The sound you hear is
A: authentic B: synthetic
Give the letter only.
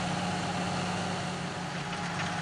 A